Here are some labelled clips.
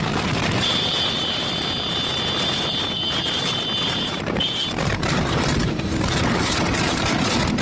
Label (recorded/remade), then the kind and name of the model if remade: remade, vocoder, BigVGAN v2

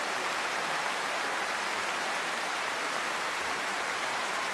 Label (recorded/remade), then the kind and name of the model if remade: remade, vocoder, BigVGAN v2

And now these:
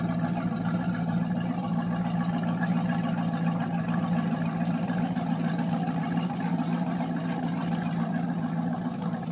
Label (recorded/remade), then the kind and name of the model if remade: recorded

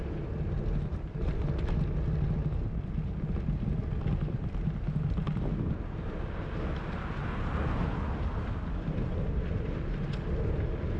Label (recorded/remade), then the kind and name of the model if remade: recorded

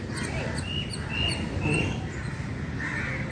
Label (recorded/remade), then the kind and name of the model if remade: recorded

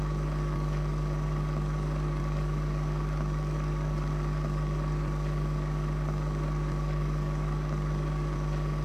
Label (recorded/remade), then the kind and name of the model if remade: remade, codec, DAC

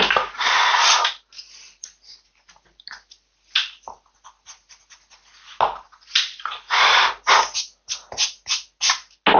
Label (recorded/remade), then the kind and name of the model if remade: recorded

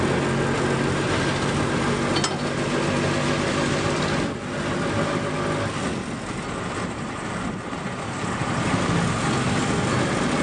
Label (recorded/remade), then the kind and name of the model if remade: recorded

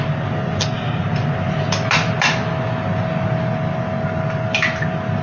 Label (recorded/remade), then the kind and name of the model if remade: recorded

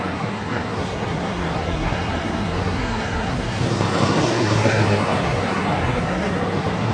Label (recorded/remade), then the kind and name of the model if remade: remade, codec, SNAC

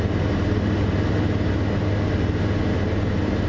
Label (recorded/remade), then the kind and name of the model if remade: recorded